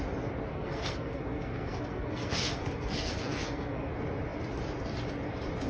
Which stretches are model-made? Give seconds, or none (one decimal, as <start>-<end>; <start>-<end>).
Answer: 0.5-3.9